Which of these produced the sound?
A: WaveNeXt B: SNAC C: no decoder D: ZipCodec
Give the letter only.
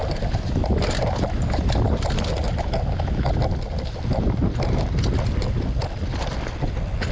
C